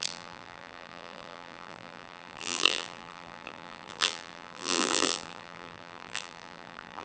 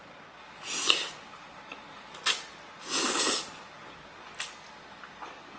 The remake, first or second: first